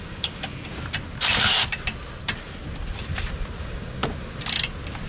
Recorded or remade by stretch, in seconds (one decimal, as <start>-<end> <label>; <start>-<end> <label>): 0.0-0.5 remade; 0.5-3.6 recorded; 3.6-4.0 remade; 4.0-5.1 recorded